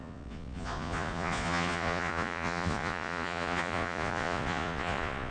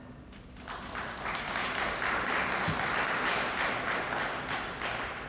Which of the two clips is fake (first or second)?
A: first